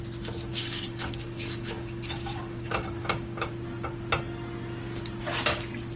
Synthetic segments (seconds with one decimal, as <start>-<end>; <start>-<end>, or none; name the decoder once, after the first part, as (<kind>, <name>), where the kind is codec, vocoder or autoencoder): 0.5-3.5 (codec, DAC)